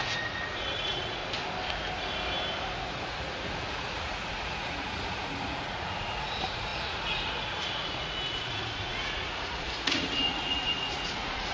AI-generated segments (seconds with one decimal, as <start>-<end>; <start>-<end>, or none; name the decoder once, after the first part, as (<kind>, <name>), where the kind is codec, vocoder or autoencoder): 0.0-1.2 (vocoder, Vocos); 3.0-11.5